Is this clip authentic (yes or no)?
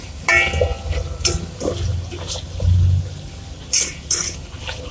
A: yes